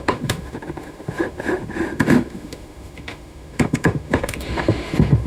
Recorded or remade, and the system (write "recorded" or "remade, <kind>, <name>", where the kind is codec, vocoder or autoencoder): remade, autoencoder, DAC-VAE